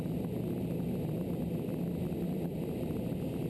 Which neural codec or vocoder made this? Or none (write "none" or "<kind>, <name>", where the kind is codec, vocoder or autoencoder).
none